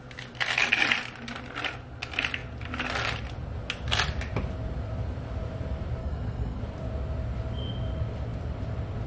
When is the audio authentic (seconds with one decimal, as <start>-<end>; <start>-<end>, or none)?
0.0-6.0; 6.6-9.1